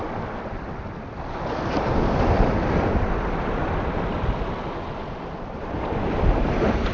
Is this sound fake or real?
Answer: real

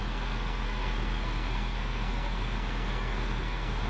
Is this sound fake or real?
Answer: fake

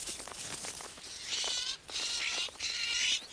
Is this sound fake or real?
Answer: real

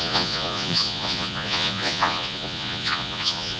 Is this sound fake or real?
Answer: fake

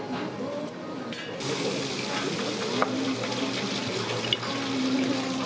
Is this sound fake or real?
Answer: real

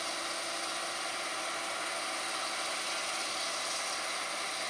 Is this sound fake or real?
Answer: real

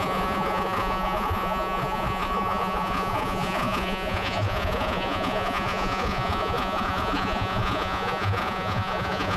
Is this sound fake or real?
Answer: fake